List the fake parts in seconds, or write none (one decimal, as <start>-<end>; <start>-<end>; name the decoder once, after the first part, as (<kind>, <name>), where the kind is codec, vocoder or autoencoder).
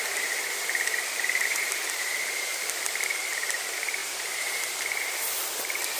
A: 0.0-2.5 (vocoder, BigVGAN v2); 3.1-6.0